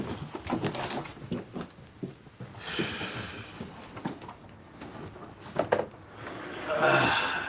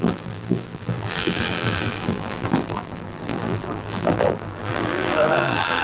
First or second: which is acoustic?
first